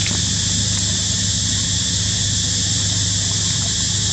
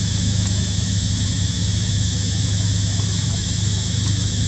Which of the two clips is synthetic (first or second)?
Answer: second